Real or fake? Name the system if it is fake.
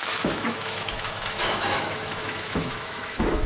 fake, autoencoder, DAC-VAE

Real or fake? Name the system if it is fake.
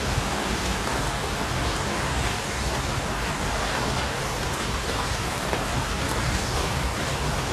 fake, codec, DAC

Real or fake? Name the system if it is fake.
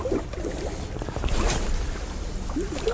real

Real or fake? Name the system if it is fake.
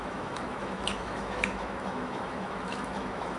fake, autoencoder, DAC-VAE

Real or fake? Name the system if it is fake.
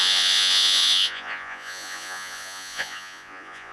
fake, vocoder, Vocos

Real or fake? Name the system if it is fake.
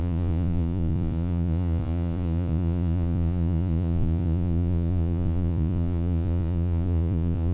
fake, vocoder, Vocos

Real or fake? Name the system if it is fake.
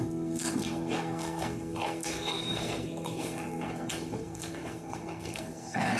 fake, codec, SNAC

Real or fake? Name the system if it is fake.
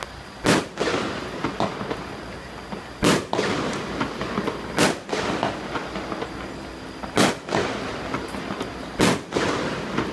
real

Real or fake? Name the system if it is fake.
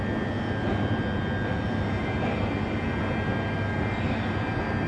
real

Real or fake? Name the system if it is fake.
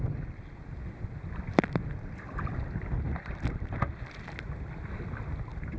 real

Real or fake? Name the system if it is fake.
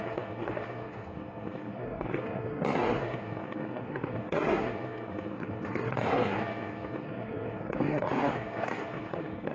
fake, codec, SNAC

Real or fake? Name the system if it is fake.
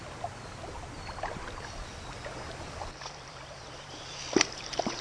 fake, vocoder, BigVGAN v2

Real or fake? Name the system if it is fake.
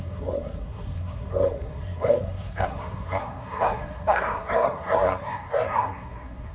fake, codec, SNAC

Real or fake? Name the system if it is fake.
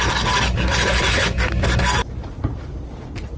real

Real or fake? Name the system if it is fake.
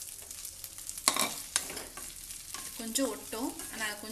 real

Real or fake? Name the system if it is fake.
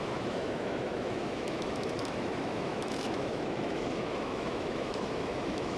fake, autoencoder, DAC-VAE